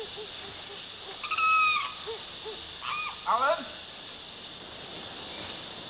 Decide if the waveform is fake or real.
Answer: real